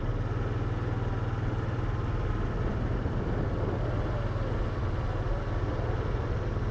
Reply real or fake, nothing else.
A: real